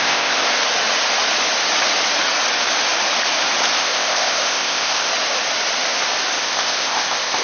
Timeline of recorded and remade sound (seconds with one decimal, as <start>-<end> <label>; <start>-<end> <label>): 0.0-0.5 remade; 0.5-3.8 recorded; 3.8-5.1 remade; 5.1-6.4 recorded; 6.4-7.4 remade